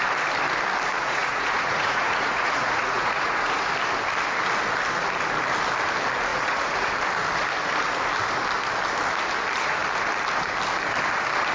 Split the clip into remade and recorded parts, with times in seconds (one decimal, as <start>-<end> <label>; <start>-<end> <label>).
0.0-1.0 recorded; 1.0-3.7 remade; 3.7-6.3 recorded; 6.3-6.9 remade; 6.9-11.5 recorded